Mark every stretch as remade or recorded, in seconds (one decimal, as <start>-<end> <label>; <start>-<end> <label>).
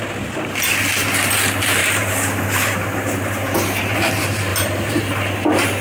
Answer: 0.0-1.8 recorded; 1.8-4.1 remade; 4.1-4.5 recorded; 4.5-5.0 remade; 5.0-5.8 recorded